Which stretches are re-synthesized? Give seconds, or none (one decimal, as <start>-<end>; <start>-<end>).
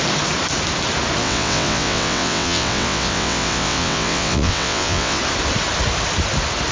1.2-5.2